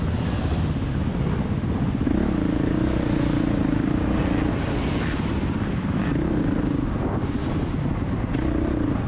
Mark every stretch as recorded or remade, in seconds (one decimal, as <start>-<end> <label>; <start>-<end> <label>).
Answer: 0.0-9.1 recorded